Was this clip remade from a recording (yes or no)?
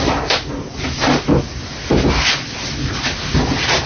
no